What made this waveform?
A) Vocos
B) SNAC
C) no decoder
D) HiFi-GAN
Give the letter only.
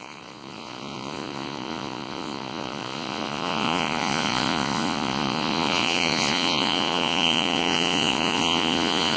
A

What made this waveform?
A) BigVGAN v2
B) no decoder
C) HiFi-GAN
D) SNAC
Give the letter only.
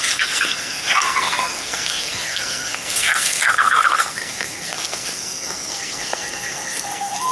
D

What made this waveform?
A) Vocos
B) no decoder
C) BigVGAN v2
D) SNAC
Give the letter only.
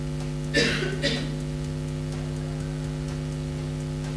B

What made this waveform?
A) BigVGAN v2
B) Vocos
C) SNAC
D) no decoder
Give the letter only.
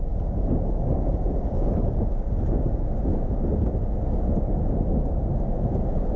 D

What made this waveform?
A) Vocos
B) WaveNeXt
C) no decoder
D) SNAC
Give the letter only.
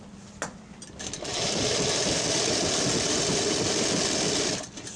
C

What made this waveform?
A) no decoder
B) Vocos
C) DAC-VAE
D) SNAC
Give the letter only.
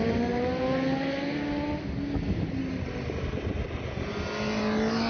A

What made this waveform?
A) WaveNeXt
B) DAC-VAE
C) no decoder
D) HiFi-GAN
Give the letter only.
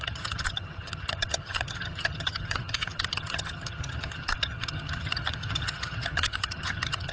D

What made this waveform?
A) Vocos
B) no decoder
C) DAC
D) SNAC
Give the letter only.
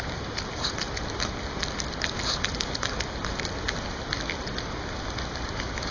B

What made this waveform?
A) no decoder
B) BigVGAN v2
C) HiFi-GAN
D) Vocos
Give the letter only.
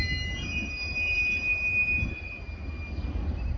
A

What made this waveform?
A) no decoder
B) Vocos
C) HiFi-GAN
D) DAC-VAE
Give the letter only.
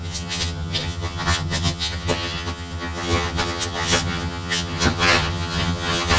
C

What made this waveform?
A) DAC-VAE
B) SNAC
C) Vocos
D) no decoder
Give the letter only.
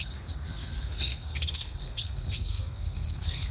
B